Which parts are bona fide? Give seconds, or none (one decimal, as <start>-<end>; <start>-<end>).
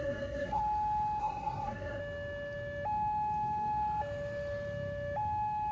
0.6-1.2; 2.0-5.7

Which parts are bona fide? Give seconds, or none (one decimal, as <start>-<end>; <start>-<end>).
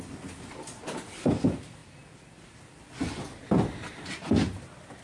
0.0-5.0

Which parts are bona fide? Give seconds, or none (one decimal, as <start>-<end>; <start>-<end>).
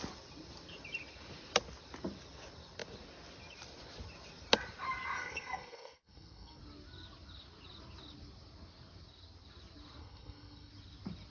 0.0-5.2; 6.6-10.0; 10.7-11.3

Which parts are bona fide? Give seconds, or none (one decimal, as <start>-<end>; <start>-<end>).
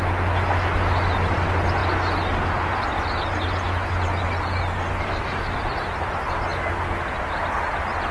0.0-8.1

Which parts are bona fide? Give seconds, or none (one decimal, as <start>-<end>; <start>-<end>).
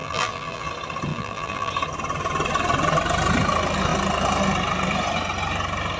0.7-1.1; 1.7-6.0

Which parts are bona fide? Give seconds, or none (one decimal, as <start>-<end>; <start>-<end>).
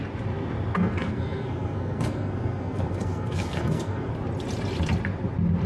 0.0-0.7; 4.1-5.7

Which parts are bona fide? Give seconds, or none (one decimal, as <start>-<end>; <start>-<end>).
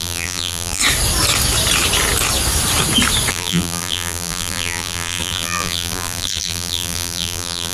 0.8-3.3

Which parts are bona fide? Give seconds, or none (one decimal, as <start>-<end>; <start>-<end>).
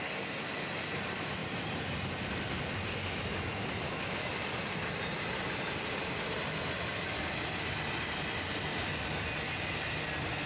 0.0-10.5